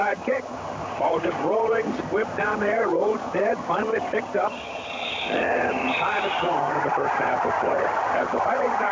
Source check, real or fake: fake